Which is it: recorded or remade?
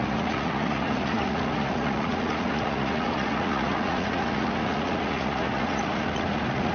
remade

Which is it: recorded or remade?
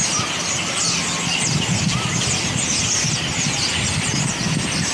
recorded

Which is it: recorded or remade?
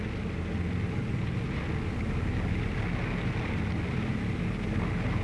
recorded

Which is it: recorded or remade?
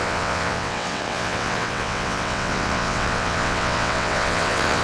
remade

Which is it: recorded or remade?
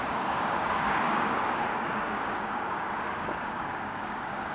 remade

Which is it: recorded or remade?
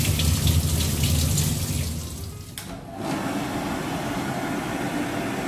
recorded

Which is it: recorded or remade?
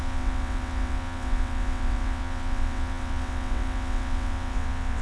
remade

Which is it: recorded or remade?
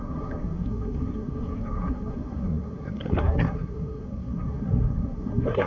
remade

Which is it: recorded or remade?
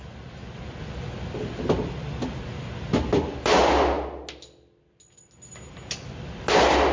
recorded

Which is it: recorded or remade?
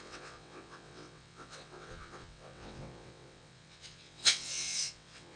remade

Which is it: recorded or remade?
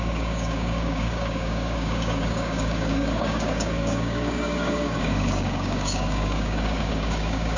remade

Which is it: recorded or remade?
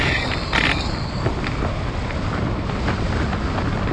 recorded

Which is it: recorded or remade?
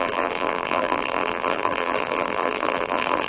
remade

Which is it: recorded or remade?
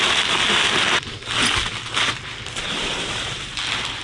recorded